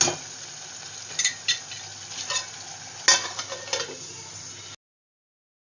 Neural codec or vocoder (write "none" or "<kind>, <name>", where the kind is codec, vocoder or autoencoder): none